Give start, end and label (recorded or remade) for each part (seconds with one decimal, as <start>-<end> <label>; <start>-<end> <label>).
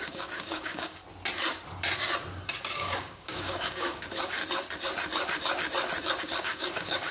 0.0-1.0 remade; 1.0-2.4 recorded; 2.4-4.4 remade; 4.4-6.2 recorded; 6.2-7.1 remade